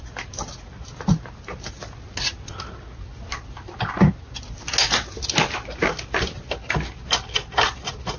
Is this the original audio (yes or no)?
yes